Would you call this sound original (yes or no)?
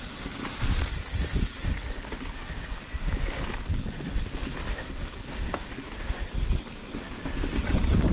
yes